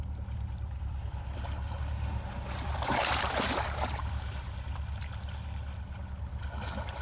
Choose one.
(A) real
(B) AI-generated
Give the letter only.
A